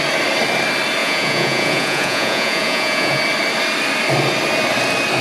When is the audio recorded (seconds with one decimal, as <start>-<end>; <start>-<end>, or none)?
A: 0.0-1.0; 3.2-5.2